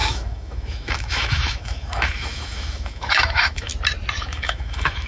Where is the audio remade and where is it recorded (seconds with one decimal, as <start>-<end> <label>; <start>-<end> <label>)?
0.0-3.7 remade; 3.7-4.2 recorded; 4.2-5.1 remade